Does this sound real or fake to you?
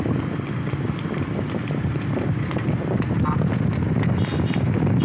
real